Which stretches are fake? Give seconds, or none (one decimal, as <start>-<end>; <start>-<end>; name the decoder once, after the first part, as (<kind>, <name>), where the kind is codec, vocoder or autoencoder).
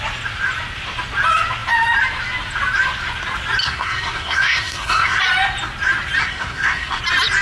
3.6-5.2 (codec, SNAC); 6.2-7.0